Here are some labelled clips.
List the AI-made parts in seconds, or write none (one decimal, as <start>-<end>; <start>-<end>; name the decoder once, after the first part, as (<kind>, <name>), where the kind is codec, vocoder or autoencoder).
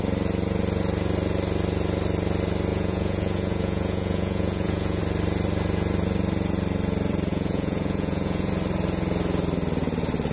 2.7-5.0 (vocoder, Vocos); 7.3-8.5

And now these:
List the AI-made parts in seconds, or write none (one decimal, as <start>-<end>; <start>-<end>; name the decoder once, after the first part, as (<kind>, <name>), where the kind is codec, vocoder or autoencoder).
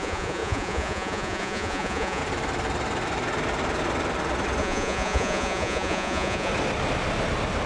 0.0-2.2 (vocoder, Vocos); 4.6-6.5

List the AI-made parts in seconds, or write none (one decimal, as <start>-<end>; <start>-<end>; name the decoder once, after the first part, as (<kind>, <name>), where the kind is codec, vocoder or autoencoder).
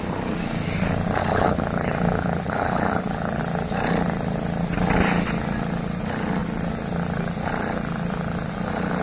1.2-3.4 (codec, HILCodec)